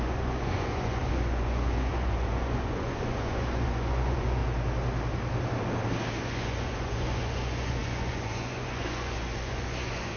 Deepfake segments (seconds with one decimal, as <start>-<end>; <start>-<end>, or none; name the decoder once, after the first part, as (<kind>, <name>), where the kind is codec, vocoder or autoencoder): 0.0-4.4 (vocoder, Vocos); 6.2-10.2